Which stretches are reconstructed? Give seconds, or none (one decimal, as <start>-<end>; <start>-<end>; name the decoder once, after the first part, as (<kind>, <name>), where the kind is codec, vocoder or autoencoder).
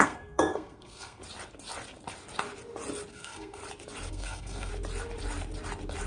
0.0-1.2 (codec, SNAC); 3.1-3.6; 4.1-4.7